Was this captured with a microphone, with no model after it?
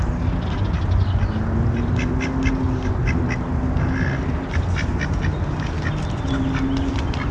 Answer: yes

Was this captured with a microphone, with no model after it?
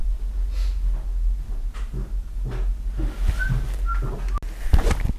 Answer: yes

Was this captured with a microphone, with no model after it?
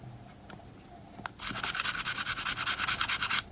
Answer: yes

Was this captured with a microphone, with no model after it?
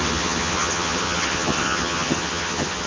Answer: no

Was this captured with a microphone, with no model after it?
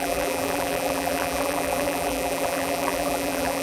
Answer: no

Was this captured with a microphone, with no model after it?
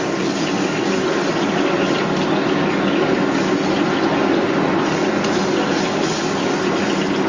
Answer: yes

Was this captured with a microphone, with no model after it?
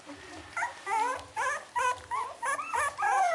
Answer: yes